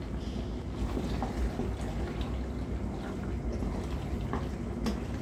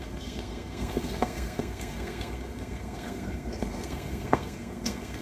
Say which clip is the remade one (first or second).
second